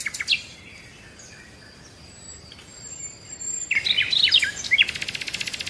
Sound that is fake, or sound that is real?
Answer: fake